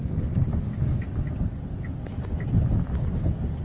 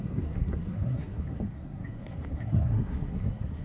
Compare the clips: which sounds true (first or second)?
first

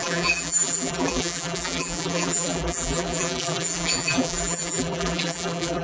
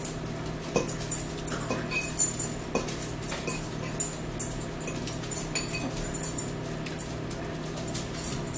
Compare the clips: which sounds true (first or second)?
second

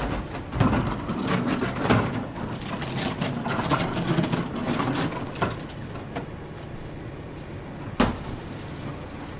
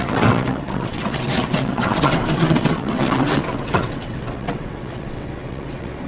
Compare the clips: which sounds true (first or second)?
first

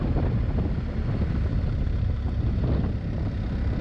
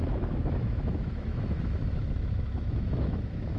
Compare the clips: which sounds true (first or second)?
first